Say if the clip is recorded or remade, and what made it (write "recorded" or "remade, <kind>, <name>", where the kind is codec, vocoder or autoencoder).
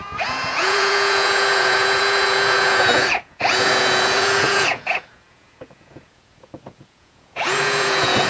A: remade, vocoder, Vocos